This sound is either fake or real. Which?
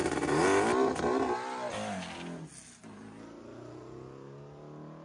real